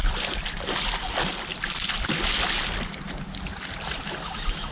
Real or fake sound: real